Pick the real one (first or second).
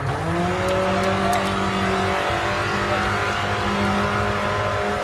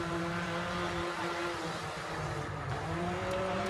first